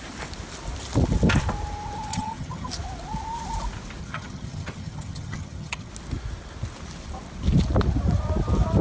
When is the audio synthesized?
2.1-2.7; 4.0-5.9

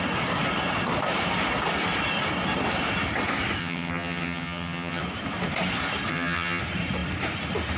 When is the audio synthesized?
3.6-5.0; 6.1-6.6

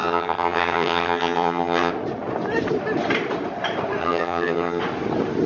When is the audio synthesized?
0.0-1.9; 4.0-4.8